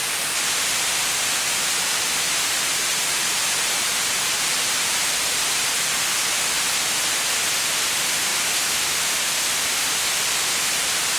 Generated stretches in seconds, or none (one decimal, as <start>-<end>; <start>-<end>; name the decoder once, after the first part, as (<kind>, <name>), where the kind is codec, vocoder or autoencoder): 0.0-6.1 (vocoder, BigVGAN v2); 7.7-8.3; 10.7-11.2